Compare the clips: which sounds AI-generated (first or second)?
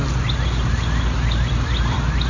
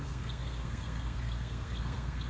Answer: second